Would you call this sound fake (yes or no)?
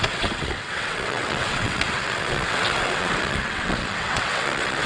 yes